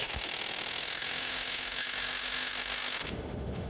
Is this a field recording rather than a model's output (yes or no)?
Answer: no